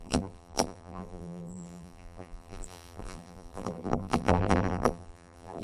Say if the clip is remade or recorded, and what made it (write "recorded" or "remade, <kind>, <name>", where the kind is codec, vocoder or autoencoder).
remade, vocoder, BigVGAN v2